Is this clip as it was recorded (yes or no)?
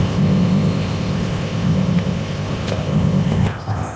no